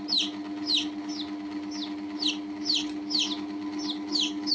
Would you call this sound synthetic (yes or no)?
no